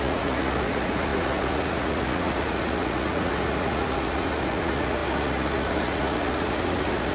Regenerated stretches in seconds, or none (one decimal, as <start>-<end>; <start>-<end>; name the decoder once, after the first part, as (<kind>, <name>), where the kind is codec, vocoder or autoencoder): 0.0-7.1 (vocoder, Vocos)